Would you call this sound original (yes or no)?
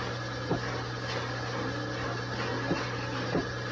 yes